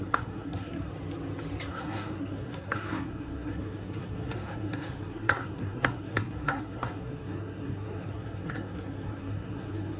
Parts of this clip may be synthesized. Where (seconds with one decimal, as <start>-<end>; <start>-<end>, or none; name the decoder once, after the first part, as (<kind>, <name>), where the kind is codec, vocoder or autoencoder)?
0.0-0.9 (codec, SNAC); 1.7-10.0